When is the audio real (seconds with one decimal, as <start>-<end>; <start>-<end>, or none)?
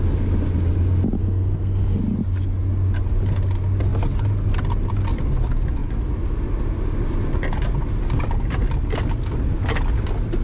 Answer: 0.0-1.2; 2.0-10.4